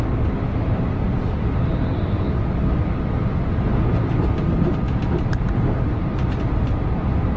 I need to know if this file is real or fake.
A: real